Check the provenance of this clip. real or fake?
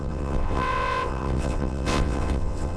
fake